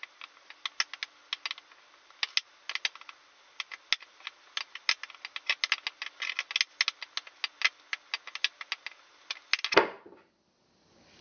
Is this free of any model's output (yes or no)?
yes